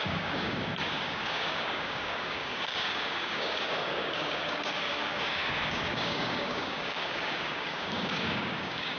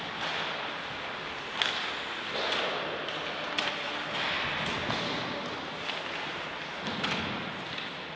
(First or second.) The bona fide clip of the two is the second